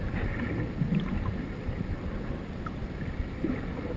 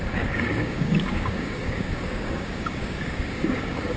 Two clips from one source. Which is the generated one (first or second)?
second